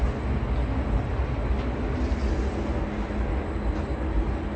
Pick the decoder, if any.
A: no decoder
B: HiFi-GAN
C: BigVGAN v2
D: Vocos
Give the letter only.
A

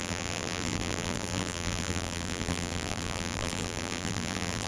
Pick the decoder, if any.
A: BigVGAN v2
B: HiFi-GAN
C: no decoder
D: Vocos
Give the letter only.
A